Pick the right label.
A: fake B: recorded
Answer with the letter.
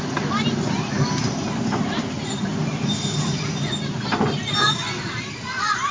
B